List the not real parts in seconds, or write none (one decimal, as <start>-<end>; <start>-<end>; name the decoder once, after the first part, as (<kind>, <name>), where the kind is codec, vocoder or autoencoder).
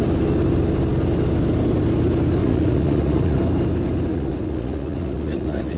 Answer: 2.4-3.4 (vocoder, Vocos); 4.1-5.8